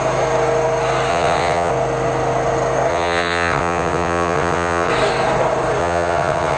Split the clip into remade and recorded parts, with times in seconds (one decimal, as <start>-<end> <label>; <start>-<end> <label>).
0.0-1.1 recorded; 1.1-1.7 remade; 1.7-2.9 recorded; 2.9-4.9 remade; 4.9-5.8 recorded; 5.8-6.6 remade

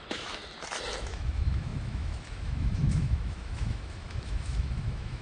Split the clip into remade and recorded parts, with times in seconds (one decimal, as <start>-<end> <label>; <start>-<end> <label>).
0.0-0.4 remade; 0.4-1.0 recorded; 1.0-5.2 remade